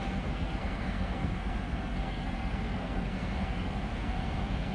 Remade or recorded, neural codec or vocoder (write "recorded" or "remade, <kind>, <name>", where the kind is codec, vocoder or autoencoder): remade, codec, SNAC